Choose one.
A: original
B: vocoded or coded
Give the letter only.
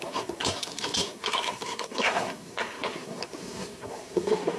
B